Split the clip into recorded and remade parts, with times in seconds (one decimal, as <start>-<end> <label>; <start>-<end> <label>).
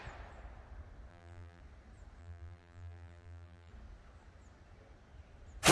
0.0-1.1 recorded; 1.1-1.6 remade; 1.6-2.2 recorded; 2.2-3.7 remade; 3.7-5.7 recorded